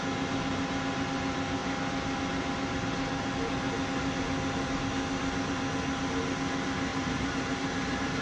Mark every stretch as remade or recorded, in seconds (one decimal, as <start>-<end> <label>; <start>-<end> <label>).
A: 0.0-6.9 recorded; 6.9-8.2 remade